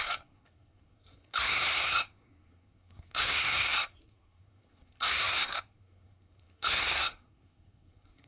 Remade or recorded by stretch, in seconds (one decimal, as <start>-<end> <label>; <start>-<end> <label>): 0.0-8.3 remade

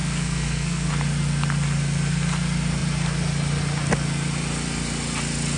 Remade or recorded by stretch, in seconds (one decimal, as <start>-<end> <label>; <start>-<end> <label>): 0.0-0.9 remade; 0.9-5.6 recorded

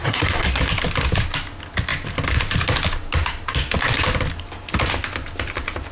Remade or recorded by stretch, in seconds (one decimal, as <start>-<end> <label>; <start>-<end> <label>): 0.0-0.6 remade; 0.6-5.9 recorded

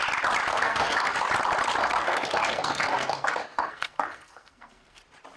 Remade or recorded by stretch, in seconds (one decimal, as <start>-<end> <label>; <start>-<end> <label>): 0.0-0.5 recorded; 0.5-1.2 remade; 1.2-1.8 recorded; 1.8-5.0 remade; 5.0-5.4 recorded